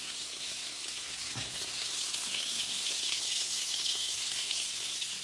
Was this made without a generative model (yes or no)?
no